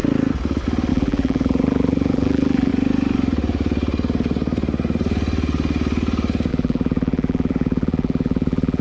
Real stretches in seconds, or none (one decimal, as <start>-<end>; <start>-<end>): 0.0-0.9; 2.7-6.5